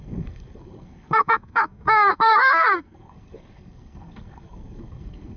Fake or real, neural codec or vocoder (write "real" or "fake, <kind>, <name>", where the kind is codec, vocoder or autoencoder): fake, codec, SNAC